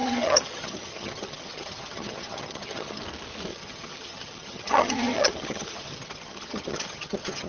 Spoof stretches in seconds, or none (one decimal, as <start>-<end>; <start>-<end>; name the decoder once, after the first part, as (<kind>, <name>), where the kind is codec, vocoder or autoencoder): 0.0-3.0 (vocoder, HiFi-GAN); 3.5-7.5